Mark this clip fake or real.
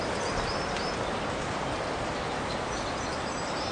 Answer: real